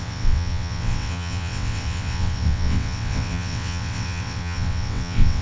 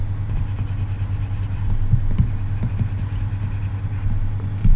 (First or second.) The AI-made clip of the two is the first